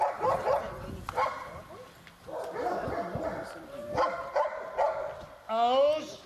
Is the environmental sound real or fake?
real